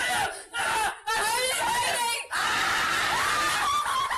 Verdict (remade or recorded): remade